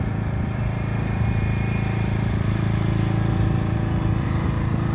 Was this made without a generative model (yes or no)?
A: no